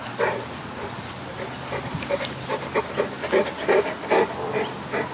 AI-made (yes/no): no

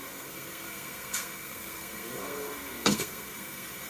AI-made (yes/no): yes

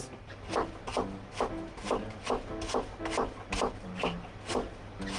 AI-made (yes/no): no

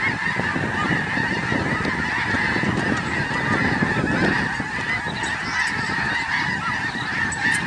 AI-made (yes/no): no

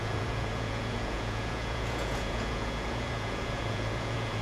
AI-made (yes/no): yes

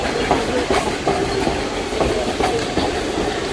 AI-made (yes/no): yes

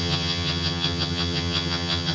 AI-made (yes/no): yes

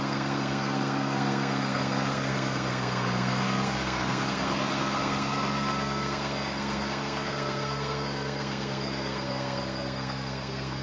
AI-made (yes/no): yes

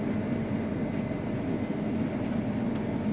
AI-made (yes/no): no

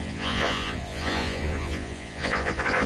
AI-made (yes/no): yes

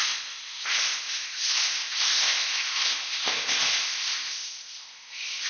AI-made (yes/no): yes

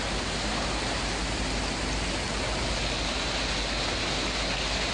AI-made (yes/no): no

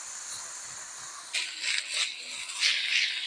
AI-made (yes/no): no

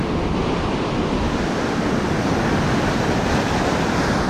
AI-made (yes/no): no